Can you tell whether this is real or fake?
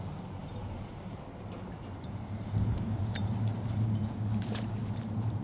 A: fake